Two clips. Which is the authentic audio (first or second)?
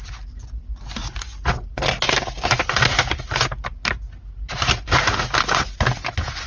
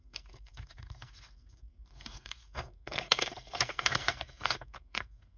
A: first